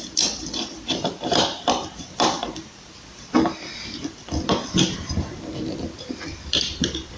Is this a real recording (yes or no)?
no